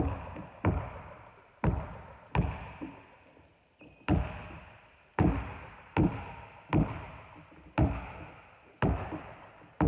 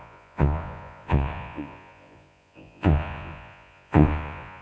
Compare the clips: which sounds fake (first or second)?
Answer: second